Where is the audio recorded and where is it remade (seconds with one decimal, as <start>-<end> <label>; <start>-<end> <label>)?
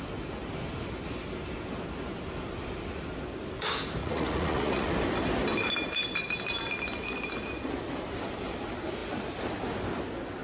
0.0-4.0 recorded; 4.0-4.9 remade; 4.9-10.4 recorded